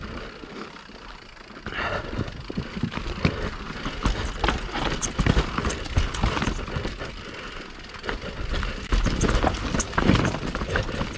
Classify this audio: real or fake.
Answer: real